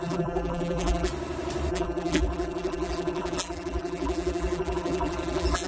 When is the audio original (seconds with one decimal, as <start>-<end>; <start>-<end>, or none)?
1.1-1.7